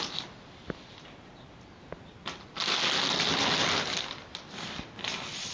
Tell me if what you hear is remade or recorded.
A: recorded